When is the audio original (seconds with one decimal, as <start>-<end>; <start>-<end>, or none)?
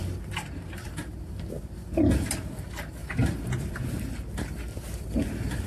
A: 1.6-3.0; 3.9-4.7; 5.3-5.7